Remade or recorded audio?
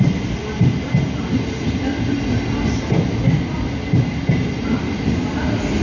recorded